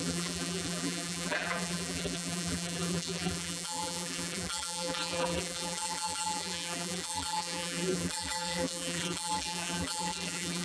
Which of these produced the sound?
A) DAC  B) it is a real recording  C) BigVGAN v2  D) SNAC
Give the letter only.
C